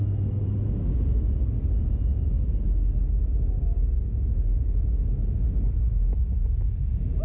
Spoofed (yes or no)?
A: no